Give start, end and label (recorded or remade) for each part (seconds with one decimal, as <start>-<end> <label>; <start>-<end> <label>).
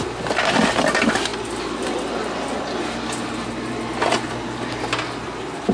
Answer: 0.0-5.7 recorded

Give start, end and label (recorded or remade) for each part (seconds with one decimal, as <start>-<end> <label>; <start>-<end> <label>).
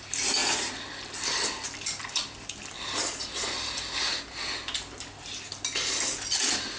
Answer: 0.0-6.8 recorded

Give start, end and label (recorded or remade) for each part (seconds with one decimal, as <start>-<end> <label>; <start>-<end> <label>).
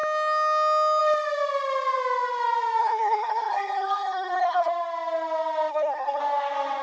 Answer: 0.0-2.8 recorded; 2.8-4.7 remade; 4.7-5.7 recorded; 5.7-6.2 remade; 6.2-6.8 recorded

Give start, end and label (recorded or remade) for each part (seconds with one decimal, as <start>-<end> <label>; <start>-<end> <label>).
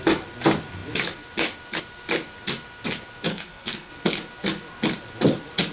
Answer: 0.0-3.3 recorded; 3.3-3.9 remade; 3.9-5.7 recorded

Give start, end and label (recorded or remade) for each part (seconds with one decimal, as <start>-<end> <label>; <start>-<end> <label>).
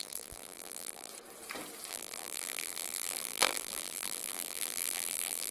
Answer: 0.0-1.1 remade; 1.1-1.9 recorded; 1.9-5.5 remade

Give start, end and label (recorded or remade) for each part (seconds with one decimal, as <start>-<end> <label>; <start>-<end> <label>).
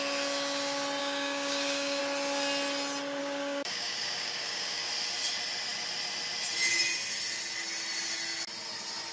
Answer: 0.0-1.0 recorded; 1.0-2.0 remade; 2.0-3.2 recorded; 3.2-4.9 remade; 4.9-9.1 recorded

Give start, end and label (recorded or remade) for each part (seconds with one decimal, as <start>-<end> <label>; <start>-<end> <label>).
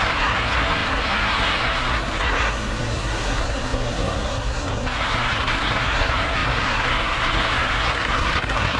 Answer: 0.0-8.8 remade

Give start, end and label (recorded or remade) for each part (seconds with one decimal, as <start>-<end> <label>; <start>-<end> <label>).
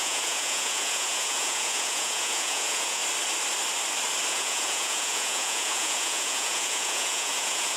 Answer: 0.0-3.0 remade; 3.0-4.3 recorded; 4.3-7.8 remade